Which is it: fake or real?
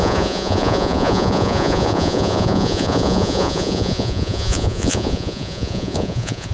fake